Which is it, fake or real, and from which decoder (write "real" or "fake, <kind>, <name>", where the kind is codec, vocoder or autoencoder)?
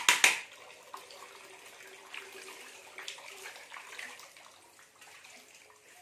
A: real